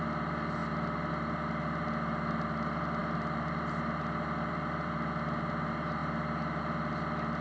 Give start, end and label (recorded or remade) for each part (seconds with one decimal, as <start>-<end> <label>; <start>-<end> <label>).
0.0-7.4 recorded